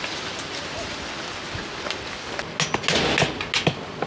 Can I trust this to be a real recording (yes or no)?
yes